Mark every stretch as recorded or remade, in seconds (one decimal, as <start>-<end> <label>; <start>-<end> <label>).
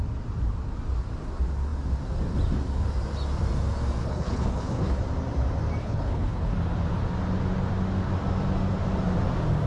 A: 0.0-4.0 recorded; 4.0-5.0 remade; 5.0-5.8 recorded; 5.8-6.5 remade; 6.5-9.7 recorded